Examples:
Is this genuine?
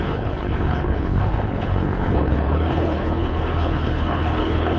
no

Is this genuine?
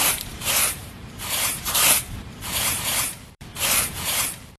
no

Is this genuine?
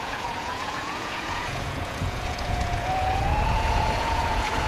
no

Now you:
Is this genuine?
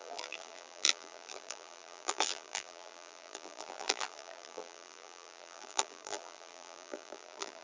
no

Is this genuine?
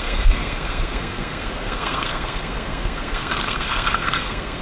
no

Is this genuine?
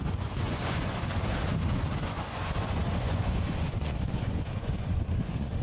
no